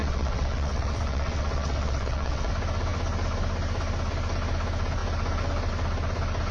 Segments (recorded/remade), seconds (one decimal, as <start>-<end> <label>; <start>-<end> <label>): 0.0-2.5 remade; 2.5-6.5 recorded